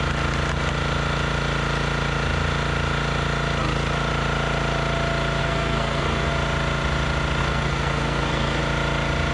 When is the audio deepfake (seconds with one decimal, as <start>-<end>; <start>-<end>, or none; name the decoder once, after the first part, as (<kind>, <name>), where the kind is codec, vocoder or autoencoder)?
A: 5.4-6.3 (codec, SNAC); 7.4-8.6